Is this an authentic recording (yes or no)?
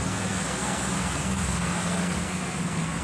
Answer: no